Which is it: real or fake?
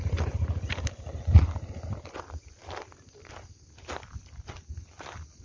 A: real